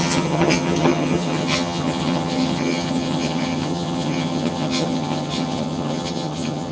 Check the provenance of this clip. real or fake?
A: fake